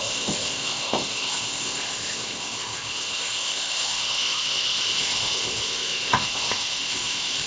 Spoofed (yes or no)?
yes